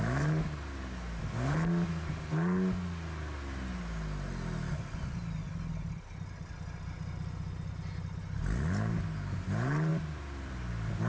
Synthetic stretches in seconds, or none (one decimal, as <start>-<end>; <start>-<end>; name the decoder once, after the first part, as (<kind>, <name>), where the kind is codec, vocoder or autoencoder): 9.9-10.7 (vocoder, BigVGAN v2)

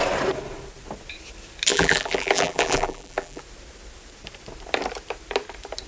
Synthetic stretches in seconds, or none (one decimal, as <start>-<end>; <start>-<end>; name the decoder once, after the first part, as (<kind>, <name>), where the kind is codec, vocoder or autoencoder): 1.7-3.4 (vocoder, BigVGAN v2)

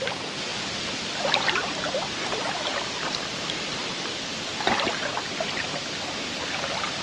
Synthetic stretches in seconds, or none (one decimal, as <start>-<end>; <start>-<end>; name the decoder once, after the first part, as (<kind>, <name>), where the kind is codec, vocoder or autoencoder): 0.5-1.2 (vocoder, BigVGAN v2)

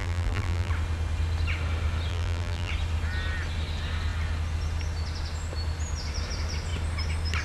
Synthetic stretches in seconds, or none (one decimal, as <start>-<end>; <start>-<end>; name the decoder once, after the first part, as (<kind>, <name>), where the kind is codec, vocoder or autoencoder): 0.0-0.7 (vocoder, BigVGAN v2); 2.1-2.7

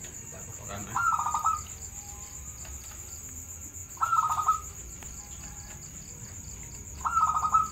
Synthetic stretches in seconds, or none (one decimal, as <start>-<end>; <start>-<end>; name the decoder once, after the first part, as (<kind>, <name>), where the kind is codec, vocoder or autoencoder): none